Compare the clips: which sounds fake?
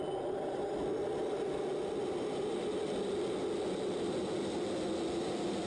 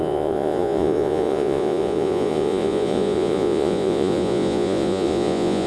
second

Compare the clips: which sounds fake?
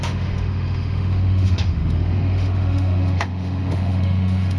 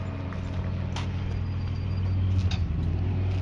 first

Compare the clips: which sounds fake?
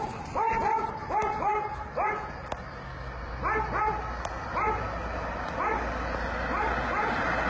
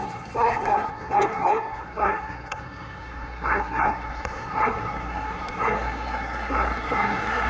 second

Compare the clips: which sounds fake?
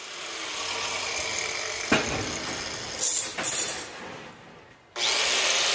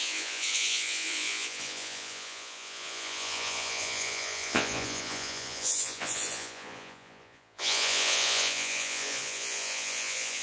second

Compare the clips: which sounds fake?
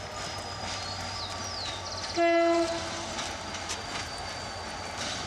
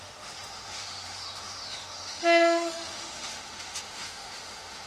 second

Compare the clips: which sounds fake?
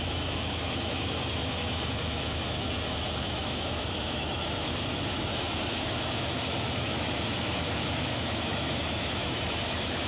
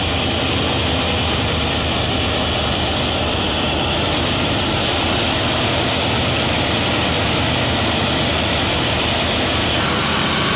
first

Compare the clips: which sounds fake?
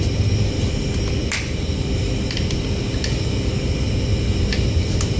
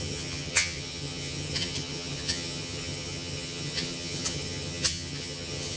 second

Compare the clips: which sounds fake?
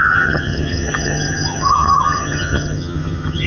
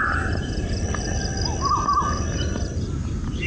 first